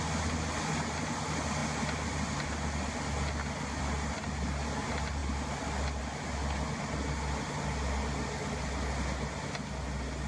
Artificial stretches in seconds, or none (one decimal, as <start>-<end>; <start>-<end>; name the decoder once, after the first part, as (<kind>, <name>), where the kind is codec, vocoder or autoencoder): none